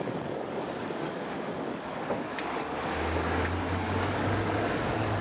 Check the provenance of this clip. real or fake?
fake